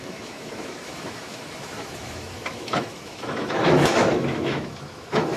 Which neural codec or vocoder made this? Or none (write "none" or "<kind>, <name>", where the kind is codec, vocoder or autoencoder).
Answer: autoencoder, DAC-VAE